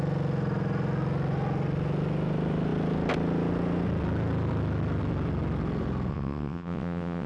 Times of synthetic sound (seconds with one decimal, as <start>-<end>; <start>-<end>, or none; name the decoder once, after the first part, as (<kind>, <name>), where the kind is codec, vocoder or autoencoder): 6.1-7.3 (vocoder, WaveNeXt)